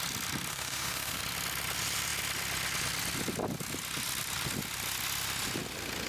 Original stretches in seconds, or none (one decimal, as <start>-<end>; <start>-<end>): 0.0-0.5; 1.2-6.1